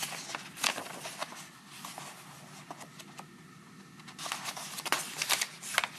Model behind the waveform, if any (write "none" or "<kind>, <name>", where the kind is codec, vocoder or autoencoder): none